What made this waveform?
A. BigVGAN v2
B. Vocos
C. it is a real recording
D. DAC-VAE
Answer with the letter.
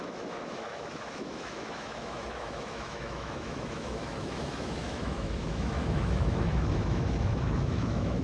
D